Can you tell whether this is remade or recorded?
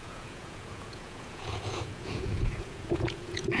remade